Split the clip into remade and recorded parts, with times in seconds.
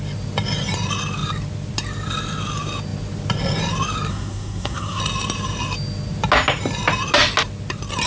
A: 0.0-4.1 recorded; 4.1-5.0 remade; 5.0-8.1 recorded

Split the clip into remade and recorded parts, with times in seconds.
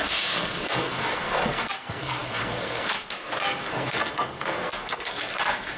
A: 0.0-5.8 remade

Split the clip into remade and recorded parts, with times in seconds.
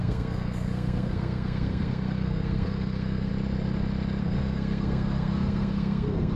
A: 0.0-3.3 remade; 3.3-4.2 recorded; 4.2-6.4 remade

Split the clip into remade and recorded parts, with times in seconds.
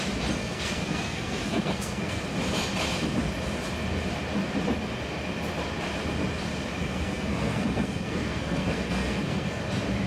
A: 0.0-0.4 recorded; 0.4-2.2 remade; 2.2-6.8 recorded; 6.8-9.6 remade; 9.6-10.1 recorded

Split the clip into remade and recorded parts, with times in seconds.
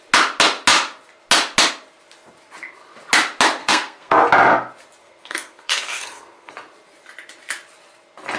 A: 0.0-3.6 recorded; 3.6-4.2 remade; 4.2-5.0 recorded; 5.0-6.5 remade; 6.5-8.4 recorded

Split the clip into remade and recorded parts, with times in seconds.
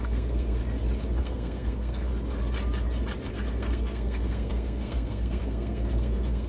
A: 0.0-0.6 remade; 0.6-1.2 recorded; 1.2-2.1 remade; 2.1-3.3 recorded; 3.3-6.5 remade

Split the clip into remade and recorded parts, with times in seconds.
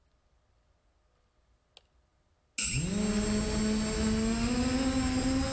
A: 0.0-5.5 recorded